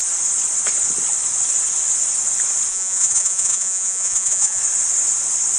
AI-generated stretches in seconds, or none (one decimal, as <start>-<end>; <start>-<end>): 2.7-4.6